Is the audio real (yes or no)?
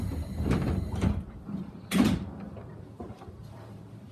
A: no